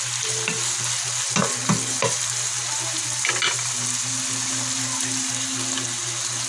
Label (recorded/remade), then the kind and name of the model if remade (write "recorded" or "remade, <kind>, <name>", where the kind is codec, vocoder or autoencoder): recorded